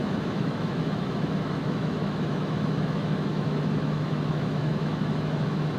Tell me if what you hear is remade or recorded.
remade